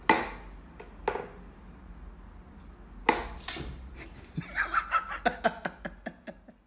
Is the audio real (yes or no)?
yes